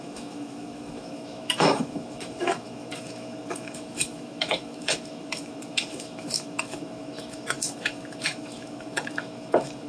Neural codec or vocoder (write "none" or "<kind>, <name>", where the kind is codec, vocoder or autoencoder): autoencoder, DAC-VAE